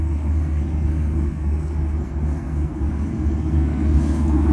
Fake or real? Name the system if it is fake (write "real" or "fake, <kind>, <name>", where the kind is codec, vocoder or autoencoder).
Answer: fake, codec, SNAC